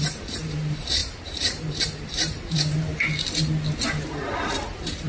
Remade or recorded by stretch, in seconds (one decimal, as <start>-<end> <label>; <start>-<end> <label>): 0.0-2.9 remade; 2.9-4.4 recorded; 4.4-5.1 remade